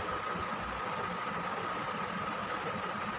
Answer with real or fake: real